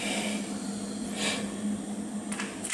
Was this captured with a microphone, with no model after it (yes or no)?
yes